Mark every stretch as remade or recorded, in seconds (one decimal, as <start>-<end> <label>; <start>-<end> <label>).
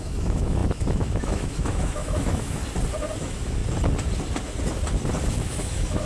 0.0-2.6 remade; 2.6-3.2 recorded; 3.2-3.6 remade; 3.6-5.5 recorded; 5.5-6.0 remade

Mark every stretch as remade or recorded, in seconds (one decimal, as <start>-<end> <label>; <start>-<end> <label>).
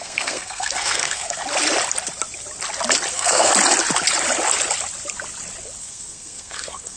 0.0-1.4 remade; 1.4-3.1 recorded; 3.1-3.5 remade; 3.5-5.8 recorded; 5.8-7.0 remade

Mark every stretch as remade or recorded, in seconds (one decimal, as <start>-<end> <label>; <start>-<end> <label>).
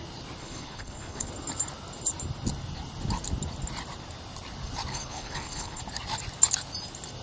0.0-0.4 recorded; 0.4-1.3 remade; 1.3-4.9 recorded; 4.9-5.8 remade; 5.8-7.2 recorded